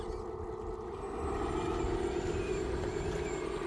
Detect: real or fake real